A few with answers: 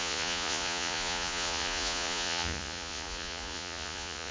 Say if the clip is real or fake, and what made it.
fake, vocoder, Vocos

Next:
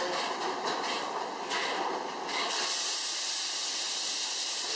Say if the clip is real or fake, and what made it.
real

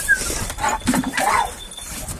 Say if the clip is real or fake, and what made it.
real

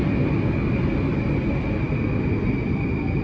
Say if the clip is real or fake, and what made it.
real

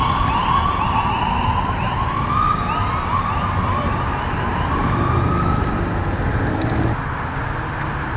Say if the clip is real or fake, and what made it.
real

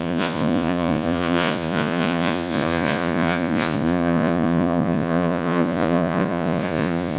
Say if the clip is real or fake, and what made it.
fake, vocoder, Vocos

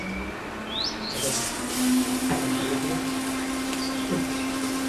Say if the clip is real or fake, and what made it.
real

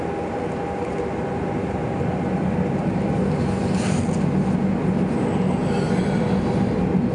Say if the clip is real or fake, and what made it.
real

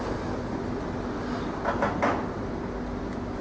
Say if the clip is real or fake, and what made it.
real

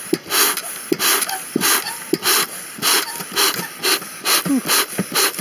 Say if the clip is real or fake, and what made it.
real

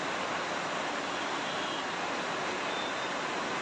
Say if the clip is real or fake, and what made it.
real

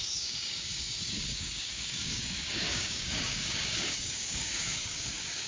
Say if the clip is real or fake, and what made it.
fake, codec, DAC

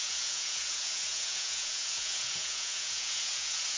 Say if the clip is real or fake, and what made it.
fake, vocoder, Vocos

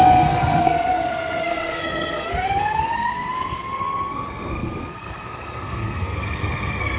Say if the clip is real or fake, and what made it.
fake, codec, SNAC